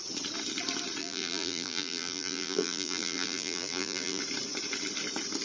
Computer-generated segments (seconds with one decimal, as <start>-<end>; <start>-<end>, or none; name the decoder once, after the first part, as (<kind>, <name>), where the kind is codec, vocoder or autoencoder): 1.0-4.2 (vocoder, BigVGAN v2)